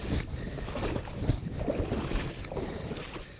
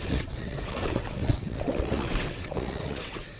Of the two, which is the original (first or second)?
first